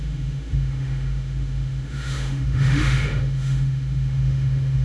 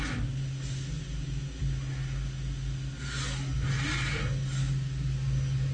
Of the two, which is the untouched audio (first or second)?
second